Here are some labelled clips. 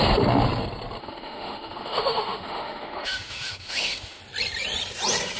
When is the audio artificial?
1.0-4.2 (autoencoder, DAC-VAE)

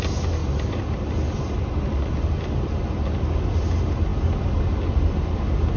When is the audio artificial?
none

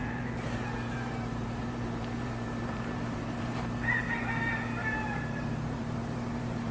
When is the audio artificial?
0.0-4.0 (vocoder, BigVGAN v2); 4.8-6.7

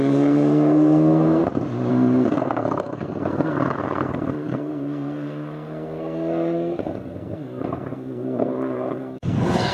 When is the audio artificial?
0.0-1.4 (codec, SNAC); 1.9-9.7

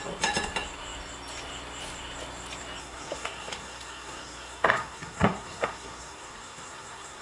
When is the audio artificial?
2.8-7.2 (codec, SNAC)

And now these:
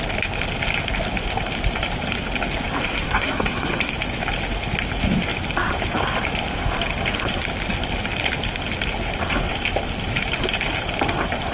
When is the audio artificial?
2.9-3.9 (codec, SNAC)

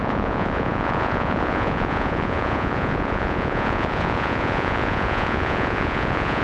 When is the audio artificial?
0.0-6.4 (vocoder, Vocos)